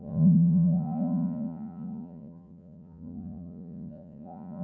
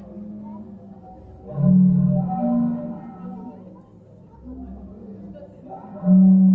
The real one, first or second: second